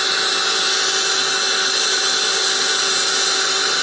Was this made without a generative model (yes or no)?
yes